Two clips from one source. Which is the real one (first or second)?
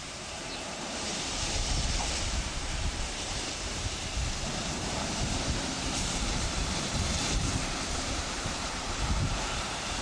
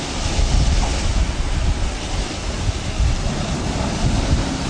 second